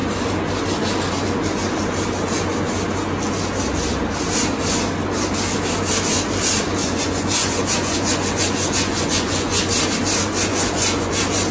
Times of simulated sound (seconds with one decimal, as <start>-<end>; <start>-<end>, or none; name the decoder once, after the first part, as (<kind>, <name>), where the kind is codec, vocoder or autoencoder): 6.8-9.6 (vocoder, Vocos); 10.5-11.1